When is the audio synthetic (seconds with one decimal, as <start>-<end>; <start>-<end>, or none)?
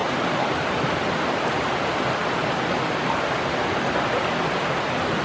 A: none